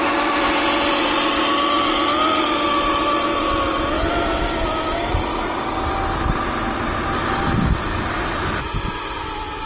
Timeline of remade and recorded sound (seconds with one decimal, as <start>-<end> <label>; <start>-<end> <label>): 0.0-9.7 recorded